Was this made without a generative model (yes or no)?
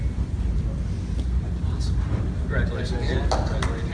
yes